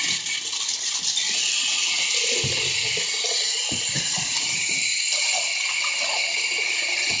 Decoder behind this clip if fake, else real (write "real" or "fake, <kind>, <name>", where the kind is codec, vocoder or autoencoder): real